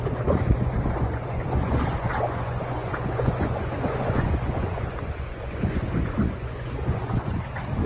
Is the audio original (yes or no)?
no